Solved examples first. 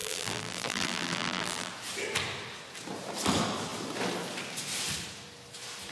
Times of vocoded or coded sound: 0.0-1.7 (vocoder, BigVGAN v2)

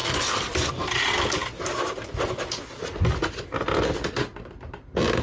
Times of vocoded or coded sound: 0.0-0.7 (vocoder, BigVGAN v2); 1.4-2.6

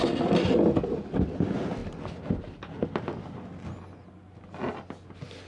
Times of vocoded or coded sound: none

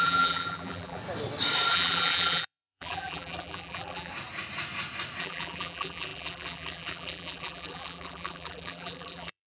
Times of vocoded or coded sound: 0.0-1.0 (vocoder, BigVGAN v2); 1.7-4.1; 5.2-9.5

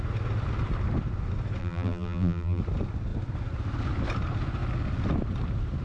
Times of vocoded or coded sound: 1.6-2.6 (vocoder, BigVGAN v2)

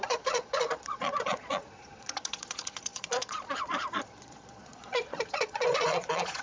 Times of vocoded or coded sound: 0.0-6.4 (vocoder, Vocos)

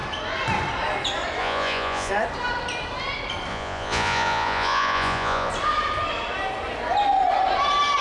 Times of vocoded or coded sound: 1.4-2.1 (vocoder, Vocos); 3.5-5.5